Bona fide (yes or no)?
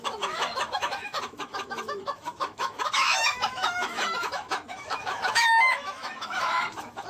no